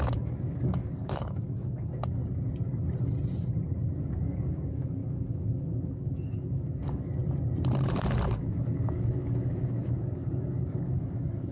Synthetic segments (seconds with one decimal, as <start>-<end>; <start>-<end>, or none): 0.0-2.2; 4.0-7.2; 8.3-11.5